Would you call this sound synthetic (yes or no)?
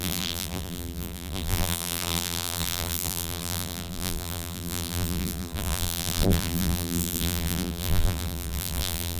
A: yes